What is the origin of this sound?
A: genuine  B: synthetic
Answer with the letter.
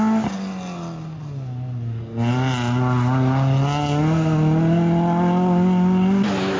A